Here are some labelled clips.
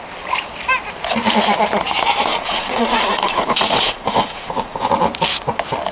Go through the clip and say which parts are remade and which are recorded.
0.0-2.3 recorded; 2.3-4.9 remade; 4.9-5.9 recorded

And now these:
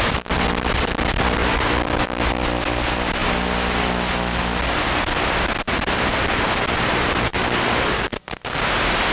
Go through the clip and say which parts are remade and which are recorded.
0.0-9.1 recorded

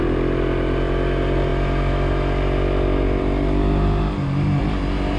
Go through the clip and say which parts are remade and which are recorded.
0.0-5.2 recorded

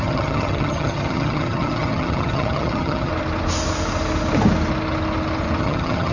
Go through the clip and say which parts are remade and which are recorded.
0.0-3.1 remade; 3.1-5.6 recorded; 5.6-6.1 remade

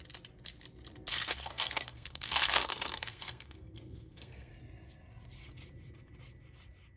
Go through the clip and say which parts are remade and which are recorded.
0.0-1.1 recorded; 1.1-4.5 remade; 4.5-7.0 recorded

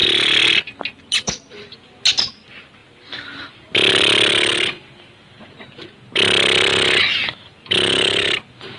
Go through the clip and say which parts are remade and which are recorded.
0.0-8.8 recorded

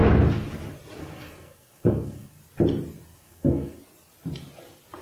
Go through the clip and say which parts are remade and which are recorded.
0.0-1.0 recorded; 1.0-2.4 remade; 2.4-3.1 recorded; 3.1-3.8 remade; 3.8-5.0 recorded

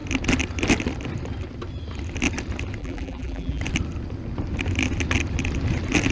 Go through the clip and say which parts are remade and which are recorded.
0.0-2.8 recorded; 2.8-3.6 remade; 3.6-6.1 recorded